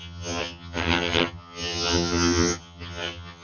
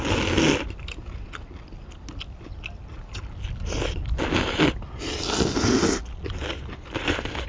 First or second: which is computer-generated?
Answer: first